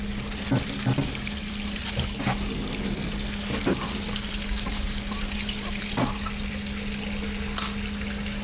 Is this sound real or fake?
real